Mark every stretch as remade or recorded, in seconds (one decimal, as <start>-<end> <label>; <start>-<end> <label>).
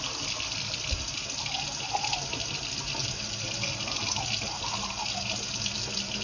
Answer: 0.0-6.2 recorded